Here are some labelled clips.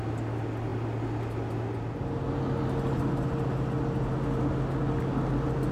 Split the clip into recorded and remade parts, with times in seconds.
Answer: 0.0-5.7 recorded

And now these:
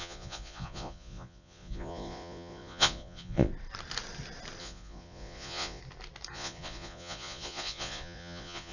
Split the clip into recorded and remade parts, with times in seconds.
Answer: 0.0-3.5 remade; 3.5-4.6 recorded; 4.6-5.8 remade; 5.8-6.3 recorded; 6.3-8.7 remade

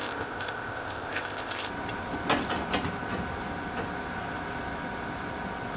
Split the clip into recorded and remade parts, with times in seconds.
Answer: 0.0-1.7 remade; 1.7-5.8 recorded

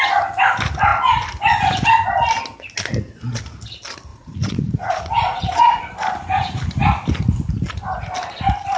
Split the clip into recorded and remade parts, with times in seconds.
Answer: 0.0-4.1 recorded; 4.1-5.8 remade; 5.8-8.8 recorded